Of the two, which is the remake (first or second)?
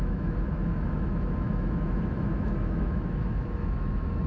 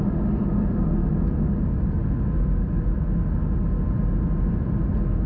first